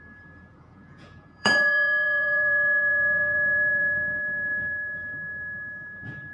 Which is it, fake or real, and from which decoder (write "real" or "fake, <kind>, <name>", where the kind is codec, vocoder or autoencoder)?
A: fake, vocoder, Vocos